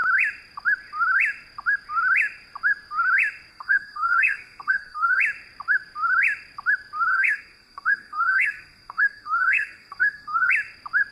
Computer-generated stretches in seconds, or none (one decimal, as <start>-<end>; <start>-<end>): 3.5-5.2; 7.1-10.5